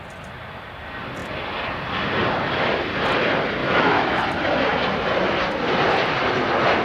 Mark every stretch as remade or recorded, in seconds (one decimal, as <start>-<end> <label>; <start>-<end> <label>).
0.0-3.6 recorded; 3.6-4.2 remade; 4.2-6.8 recorded